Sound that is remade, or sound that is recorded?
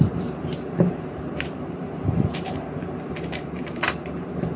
remade